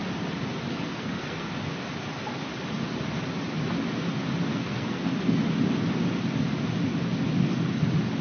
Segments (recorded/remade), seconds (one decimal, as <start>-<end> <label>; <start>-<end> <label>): 0.0-0.7 recorded; 0.7-1.5 remade; 1.5-4.5 recorded; 4.5-5.4 remade; 5.4-8.2 recorded